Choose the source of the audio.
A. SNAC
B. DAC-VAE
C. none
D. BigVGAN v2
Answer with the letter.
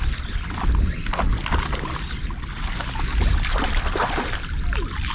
C